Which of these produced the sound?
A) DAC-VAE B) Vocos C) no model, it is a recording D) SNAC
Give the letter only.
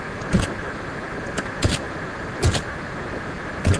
C